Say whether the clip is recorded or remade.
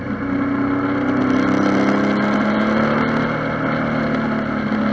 recorded